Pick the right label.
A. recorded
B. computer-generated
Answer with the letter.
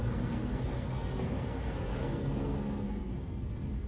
B